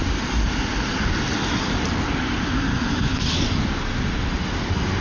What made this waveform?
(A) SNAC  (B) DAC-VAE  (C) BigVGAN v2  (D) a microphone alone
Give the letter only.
D